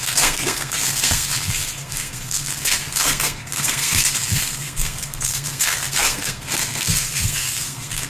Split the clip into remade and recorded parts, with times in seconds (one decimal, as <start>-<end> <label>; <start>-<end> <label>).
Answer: 0.0-8.1 remade